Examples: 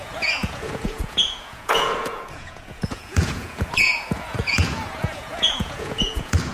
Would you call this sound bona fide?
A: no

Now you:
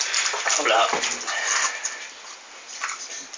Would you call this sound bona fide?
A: yes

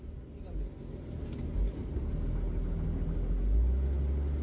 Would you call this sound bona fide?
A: yes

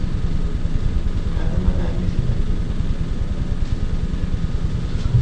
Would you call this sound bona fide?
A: yes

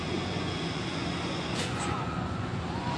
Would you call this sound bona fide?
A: no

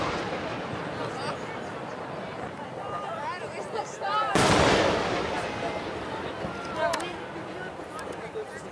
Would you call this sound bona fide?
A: yes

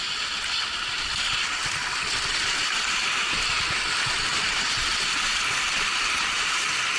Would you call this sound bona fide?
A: yes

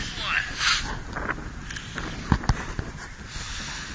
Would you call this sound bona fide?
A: yes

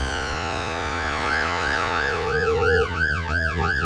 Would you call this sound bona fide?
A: no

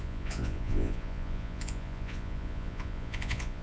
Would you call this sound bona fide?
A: no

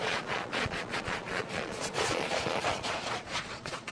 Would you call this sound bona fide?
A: no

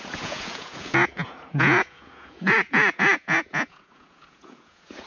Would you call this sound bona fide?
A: no